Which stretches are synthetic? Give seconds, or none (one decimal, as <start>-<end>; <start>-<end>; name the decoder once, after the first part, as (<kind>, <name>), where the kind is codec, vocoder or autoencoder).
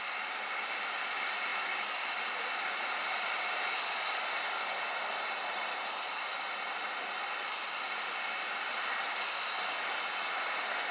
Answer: none